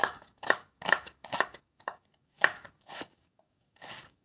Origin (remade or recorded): remade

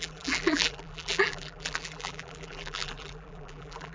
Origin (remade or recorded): remade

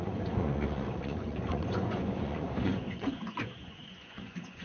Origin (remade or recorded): remade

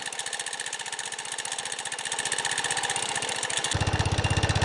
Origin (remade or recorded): recorded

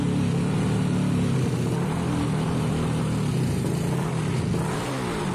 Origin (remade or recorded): recorded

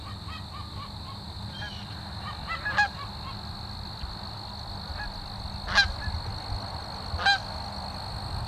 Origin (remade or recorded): recorded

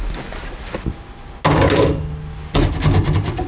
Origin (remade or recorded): recorded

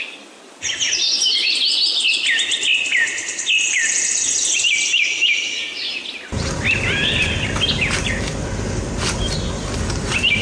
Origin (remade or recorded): recorded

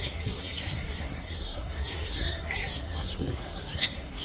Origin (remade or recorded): remade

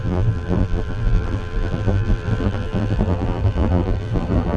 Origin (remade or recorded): remade